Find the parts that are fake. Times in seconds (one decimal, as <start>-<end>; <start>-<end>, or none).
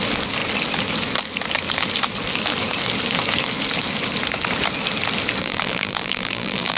5.4-6.8